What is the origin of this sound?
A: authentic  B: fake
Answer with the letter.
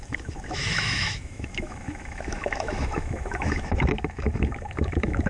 B